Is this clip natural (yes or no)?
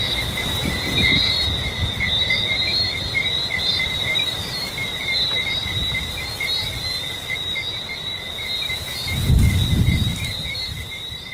no